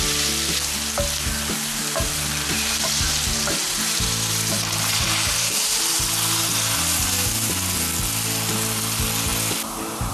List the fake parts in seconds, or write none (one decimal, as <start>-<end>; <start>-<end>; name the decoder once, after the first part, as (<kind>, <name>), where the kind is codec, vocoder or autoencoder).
1.7-6.0 (vocoder, BigVGAN v2)

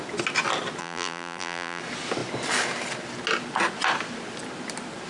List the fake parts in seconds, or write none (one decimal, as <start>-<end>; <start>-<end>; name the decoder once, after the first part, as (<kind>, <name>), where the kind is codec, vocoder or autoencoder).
0.8-1.8 (vocoder, BigVGAN v2)

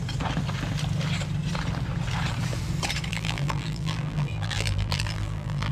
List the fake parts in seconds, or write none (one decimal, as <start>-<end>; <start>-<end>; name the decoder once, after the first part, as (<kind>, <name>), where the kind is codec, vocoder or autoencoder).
3.1-5.7 (vocoder, BigVGAN v2)

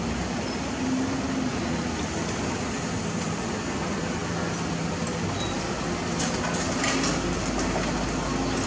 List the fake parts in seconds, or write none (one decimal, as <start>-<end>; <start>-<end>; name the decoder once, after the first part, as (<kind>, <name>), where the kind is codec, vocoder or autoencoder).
none